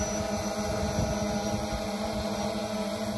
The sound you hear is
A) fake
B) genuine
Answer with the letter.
B